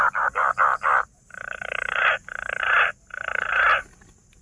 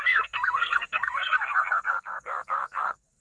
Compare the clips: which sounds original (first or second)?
first